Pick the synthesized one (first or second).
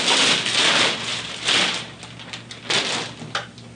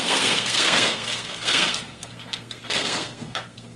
second